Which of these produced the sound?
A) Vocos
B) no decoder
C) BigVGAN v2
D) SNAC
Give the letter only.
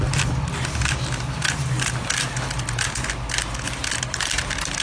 B